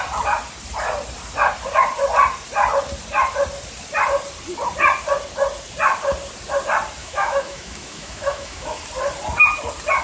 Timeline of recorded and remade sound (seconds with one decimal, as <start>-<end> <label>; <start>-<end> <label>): 0.0-7.0 recorded; 7.0-8.8 remade; 8.8-10.0 recorded